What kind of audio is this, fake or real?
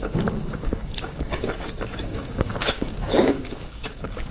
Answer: fake